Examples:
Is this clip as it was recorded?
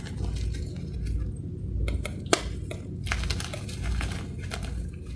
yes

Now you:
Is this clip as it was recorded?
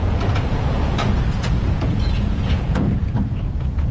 no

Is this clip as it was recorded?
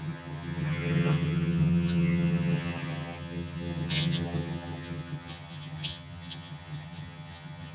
no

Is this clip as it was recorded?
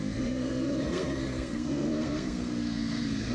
no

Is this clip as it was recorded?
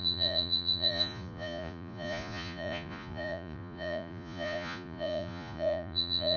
no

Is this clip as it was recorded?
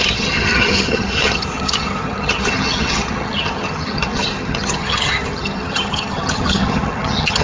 no